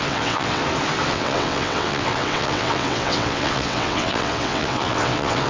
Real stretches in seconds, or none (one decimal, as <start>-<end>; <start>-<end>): 0.6-1.1